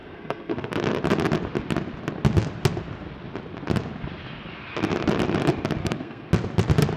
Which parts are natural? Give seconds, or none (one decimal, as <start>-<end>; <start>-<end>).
0.7-5.8; 6.3-7.0